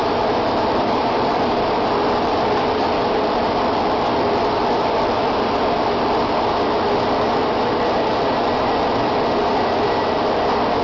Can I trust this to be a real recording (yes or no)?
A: yes